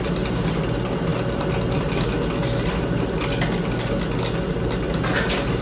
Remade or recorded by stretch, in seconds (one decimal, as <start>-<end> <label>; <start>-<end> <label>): 0.0-5.6 recorded